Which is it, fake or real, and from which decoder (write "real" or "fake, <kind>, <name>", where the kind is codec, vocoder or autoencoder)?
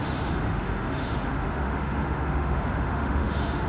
fake, autoencoder, DAC-VAE